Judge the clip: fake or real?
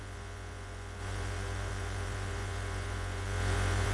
fake